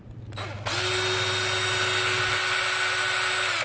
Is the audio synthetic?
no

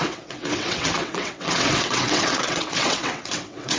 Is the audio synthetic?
yes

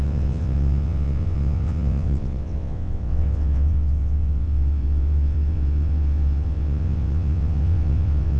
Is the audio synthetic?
yes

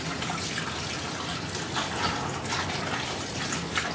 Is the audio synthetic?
no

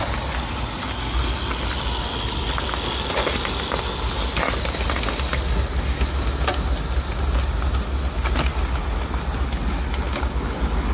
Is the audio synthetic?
no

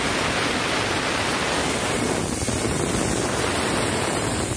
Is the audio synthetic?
no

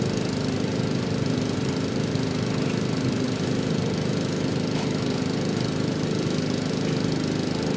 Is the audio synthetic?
no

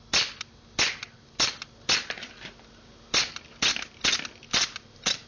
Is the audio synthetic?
no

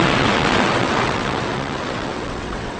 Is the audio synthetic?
yes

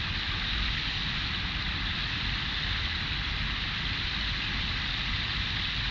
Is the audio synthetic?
no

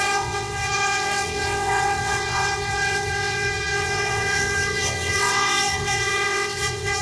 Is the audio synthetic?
yes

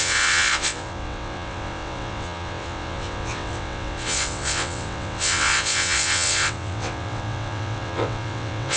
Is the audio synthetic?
yes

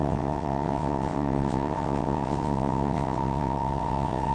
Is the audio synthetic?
yes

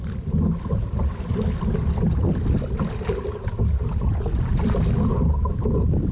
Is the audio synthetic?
no